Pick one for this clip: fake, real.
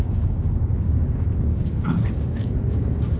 fake